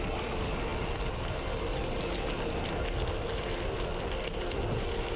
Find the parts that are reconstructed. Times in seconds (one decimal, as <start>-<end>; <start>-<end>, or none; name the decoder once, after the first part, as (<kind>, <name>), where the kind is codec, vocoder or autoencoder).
none

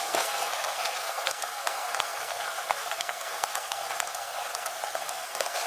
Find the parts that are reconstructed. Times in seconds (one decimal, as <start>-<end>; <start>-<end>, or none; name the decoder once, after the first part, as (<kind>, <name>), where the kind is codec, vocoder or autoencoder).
0.0-5.7 (codec, SNAC)

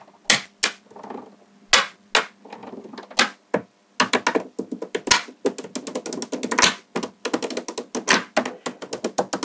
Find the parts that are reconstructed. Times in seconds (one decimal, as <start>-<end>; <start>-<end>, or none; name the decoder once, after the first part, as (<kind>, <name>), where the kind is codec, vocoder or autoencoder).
none

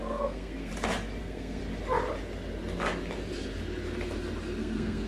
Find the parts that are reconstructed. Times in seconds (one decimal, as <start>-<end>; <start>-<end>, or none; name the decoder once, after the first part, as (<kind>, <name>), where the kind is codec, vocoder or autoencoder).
0.0-0.7 (codec, SNAC); 1.2-1.6; 4.6-5.1

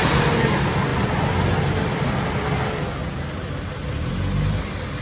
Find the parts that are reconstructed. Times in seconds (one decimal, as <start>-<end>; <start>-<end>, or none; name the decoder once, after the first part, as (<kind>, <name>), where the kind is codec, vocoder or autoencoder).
none

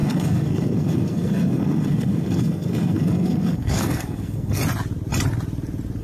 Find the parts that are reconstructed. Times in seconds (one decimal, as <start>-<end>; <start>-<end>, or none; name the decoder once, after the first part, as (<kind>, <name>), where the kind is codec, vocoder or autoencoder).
0.0-4.6 (codec, SNAC)

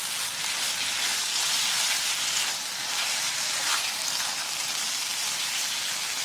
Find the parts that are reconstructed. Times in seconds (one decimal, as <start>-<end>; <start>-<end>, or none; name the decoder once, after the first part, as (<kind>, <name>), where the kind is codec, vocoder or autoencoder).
none

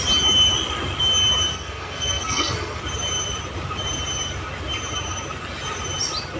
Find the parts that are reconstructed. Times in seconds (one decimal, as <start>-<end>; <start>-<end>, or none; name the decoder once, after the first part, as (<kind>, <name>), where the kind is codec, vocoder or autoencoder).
1.5-2.8 (codec, SNAC)